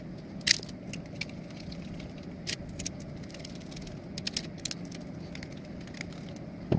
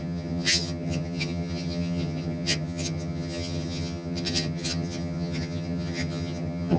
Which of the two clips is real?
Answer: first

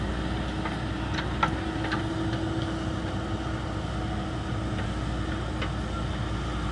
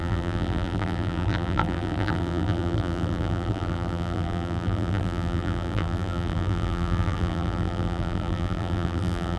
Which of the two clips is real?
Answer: first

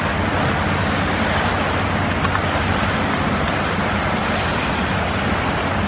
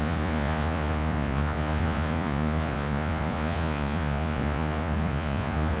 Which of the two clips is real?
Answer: first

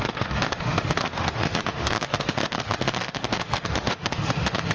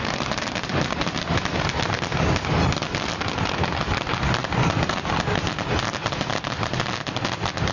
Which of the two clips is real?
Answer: second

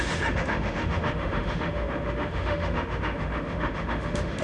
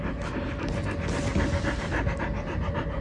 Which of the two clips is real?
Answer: second